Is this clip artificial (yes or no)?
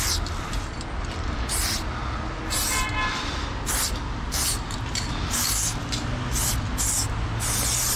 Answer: no